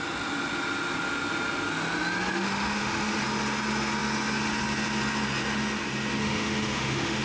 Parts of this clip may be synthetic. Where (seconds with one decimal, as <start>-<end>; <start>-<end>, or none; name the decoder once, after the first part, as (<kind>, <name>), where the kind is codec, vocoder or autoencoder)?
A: 2.3-3.2 (autoencoder, DAC-VAE); 6.2-7.2